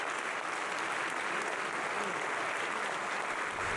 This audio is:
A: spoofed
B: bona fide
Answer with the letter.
B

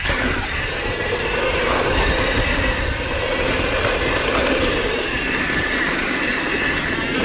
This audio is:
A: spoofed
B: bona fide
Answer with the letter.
B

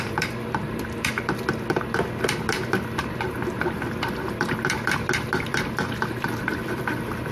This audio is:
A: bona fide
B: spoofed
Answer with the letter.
B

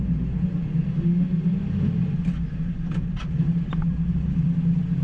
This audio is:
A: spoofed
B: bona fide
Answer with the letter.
B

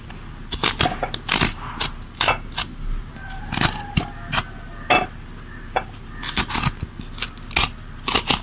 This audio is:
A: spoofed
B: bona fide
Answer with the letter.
B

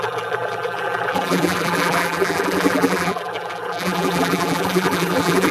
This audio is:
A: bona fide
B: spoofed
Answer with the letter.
B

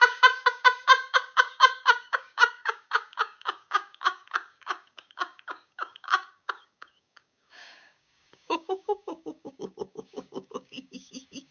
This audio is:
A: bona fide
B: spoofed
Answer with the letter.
B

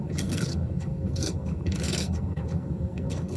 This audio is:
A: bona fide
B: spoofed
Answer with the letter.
B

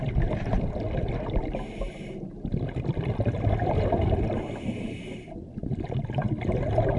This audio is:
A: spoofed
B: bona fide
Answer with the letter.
B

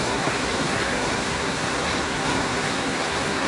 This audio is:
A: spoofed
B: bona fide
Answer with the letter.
A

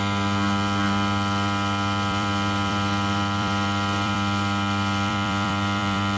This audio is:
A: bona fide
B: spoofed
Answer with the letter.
B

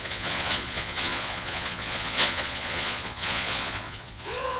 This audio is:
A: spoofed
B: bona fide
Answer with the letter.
A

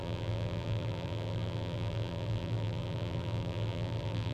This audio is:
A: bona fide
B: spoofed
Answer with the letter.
B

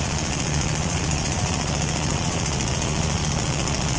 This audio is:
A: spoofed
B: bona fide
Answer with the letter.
A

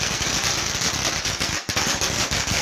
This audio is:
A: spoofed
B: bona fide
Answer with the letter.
A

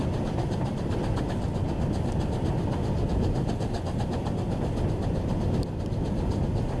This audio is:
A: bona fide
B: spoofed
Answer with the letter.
A